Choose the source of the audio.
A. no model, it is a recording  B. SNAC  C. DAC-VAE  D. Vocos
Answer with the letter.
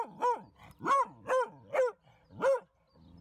A